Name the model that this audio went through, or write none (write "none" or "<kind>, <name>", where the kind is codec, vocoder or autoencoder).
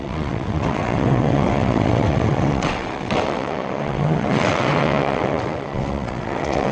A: vocoder, WaveNeXt